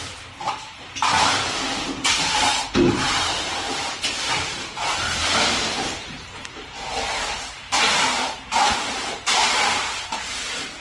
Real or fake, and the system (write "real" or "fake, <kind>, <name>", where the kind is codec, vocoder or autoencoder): fake, vocoder, BigVGAN v2